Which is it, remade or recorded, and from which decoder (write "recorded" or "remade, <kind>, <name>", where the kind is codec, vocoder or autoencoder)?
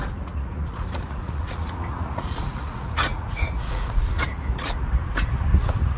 remade, vocoder, Vocos